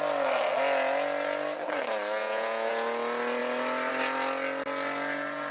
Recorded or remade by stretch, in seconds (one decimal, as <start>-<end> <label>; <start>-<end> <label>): 0.0-2.2 recorded; 2.2-2.7 remade; 2.7-5.5 recorded